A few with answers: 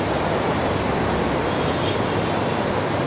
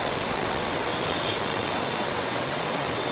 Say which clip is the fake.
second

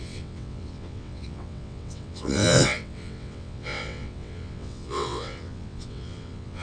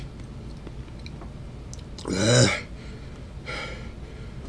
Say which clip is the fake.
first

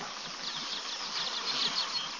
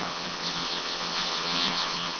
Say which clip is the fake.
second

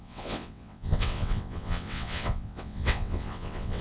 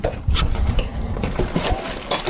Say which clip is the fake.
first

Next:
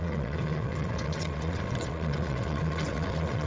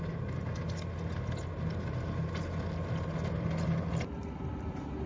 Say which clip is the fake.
first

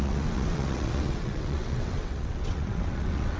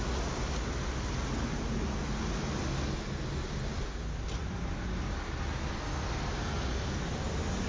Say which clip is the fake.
first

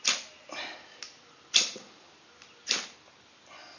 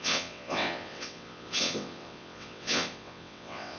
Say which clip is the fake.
second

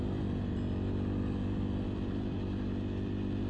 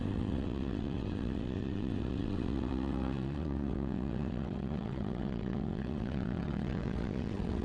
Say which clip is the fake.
second